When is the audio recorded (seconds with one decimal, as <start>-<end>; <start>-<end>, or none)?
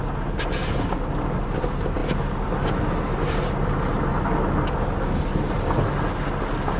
0.0-6.8